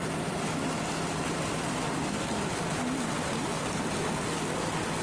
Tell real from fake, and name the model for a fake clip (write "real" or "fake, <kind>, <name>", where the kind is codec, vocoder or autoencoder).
real